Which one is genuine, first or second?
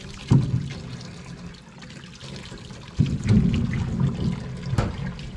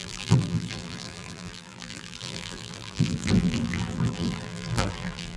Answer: first